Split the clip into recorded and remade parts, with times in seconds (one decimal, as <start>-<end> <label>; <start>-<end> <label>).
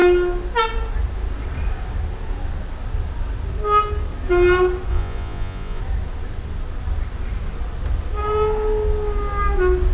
0.0-4.9 recorded; 4.9-5.8 remade; 5.8-9.9 recorded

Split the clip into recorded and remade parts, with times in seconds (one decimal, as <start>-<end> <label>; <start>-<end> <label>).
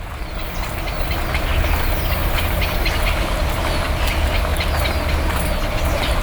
0.0-1.5 recorded; 1.5-2.9 remade; 2.9-4.5 recorded; 4.5-5.1 remade; 5.1-6.2 recorded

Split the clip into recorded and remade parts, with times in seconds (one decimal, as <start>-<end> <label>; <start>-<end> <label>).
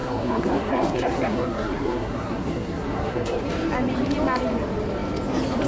0.0-3.4 remade; 3.4-5.7 recorded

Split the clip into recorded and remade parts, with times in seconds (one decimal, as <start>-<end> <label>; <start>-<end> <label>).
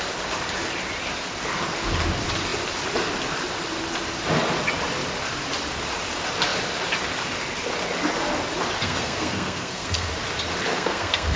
0.0-8.8 recorded; 8.8-10.1 remade; 10.1-10.7 recorded; 10.7-11.4 remade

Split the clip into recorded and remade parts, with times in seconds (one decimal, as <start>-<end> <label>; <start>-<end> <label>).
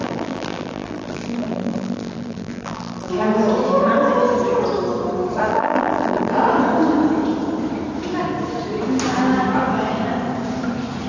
0.0-3.1 remade; 3.1-5.5 recorded; 5.5-6.3 remade; 6.3-11.1 recorded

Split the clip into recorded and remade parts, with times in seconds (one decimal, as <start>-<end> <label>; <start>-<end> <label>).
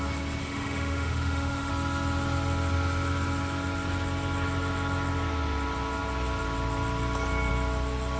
0.0-0.4 recorded; 0.4-1.7 remade; 1.7-8.2 recorded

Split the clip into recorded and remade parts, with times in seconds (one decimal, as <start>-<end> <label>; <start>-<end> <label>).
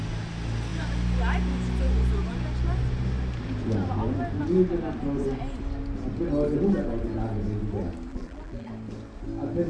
0.0-8.1 recorded; 8.1-8.7 remade; 8.7-9.7 recorded